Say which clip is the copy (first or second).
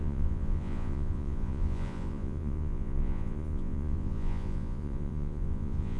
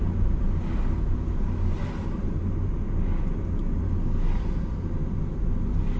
first